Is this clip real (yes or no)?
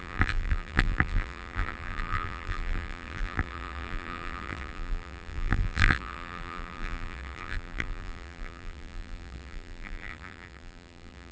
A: no